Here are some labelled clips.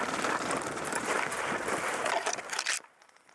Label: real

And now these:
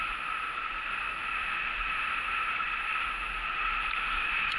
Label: real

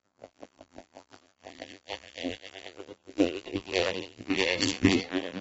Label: fake